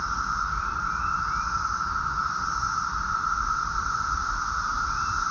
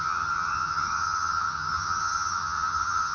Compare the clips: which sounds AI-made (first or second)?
second